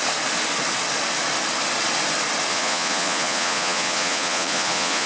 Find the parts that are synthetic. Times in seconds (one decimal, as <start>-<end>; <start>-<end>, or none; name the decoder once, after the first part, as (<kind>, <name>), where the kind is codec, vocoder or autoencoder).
2.5-5.1 (vocoder, Vocos)